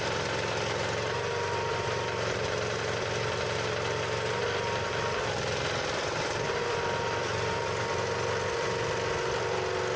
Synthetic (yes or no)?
no